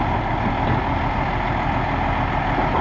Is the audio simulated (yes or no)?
no